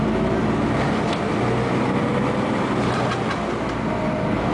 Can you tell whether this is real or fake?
real